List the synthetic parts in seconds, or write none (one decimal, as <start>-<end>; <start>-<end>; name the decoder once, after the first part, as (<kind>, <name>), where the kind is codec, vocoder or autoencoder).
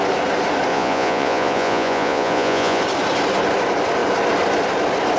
0.7-2.8 (vocoder, Vocos)